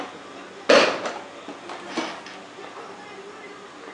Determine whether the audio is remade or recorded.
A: recorded